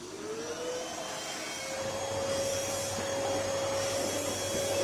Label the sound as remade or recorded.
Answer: recorded